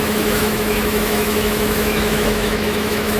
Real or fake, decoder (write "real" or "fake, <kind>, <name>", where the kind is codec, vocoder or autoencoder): fake, autoencoder, DAC-VAE